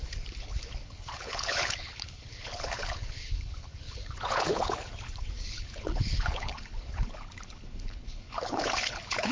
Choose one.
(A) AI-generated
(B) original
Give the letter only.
A